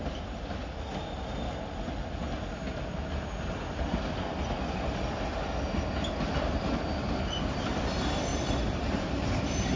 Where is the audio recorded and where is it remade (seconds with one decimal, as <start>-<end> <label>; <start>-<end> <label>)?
0.0-8.3 recorded; 8.3-9.3 remade; 9.3-9.8 recorded